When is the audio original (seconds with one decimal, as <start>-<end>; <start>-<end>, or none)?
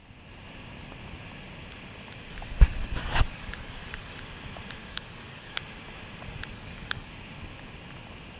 0.0-2.3; 4.2-4.8; 5.6-6.5; 7.1-8.4